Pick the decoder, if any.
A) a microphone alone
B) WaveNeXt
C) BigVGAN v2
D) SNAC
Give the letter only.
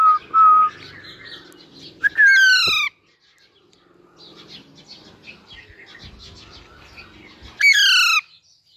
A